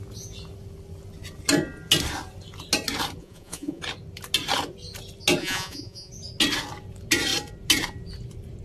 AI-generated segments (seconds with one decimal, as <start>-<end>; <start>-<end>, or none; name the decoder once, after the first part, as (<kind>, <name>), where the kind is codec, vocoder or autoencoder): 3.2-3.8 (vocoder, Vocos); 5.4-6.1